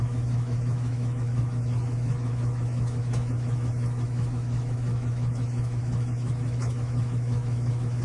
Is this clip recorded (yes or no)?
no